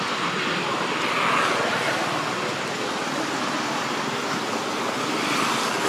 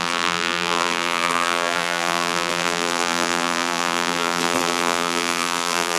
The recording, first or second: first